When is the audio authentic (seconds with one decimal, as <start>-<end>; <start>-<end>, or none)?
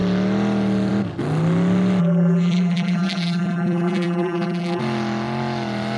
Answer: 0.0-2.0; 4.8-6.0